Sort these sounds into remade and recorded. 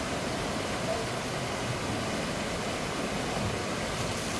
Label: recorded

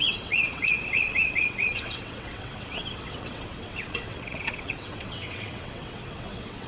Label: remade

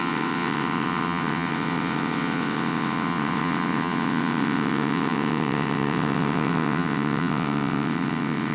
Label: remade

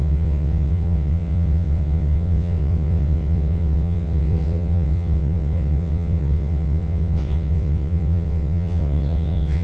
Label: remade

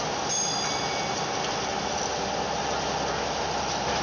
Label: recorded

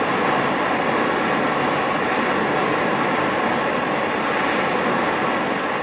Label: recorded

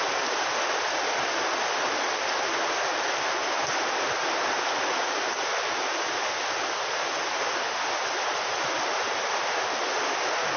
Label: recorded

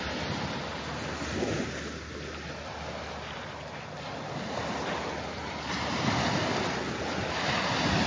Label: recorded